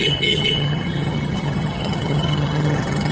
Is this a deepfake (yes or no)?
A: yes